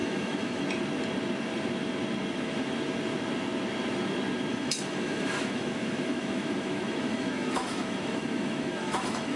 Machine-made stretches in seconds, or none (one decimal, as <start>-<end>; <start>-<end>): 0.0-0.6; 4.5-9.4